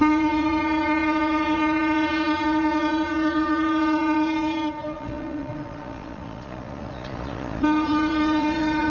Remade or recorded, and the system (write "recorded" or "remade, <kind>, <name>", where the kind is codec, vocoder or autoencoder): remade, vocoder, Vocos